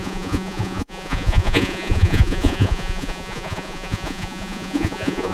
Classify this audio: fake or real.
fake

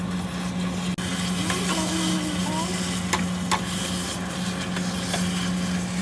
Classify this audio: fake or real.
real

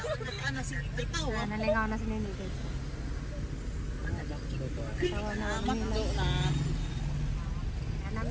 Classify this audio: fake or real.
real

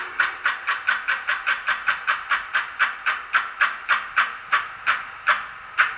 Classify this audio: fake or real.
real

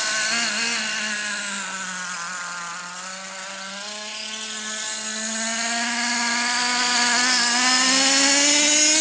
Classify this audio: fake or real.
real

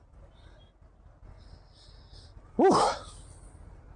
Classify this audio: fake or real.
real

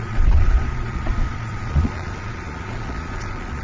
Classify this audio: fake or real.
fake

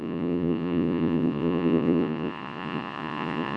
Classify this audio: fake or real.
fake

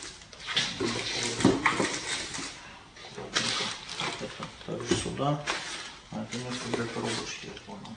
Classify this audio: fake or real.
real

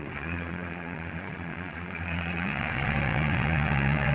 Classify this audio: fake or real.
fake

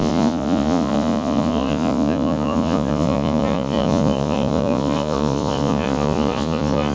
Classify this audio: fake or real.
fake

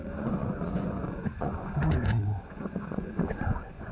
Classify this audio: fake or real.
fake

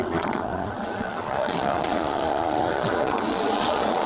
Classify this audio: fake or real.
fake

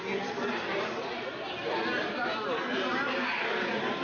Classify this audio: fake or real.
real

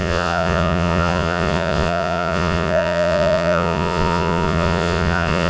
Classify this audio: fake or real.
fake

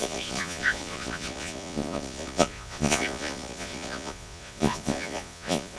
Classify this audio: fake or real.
fake